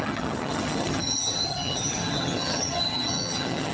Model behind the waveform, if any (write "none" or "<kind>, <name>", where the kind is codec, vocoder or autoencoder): vocoder, HiFi-GAN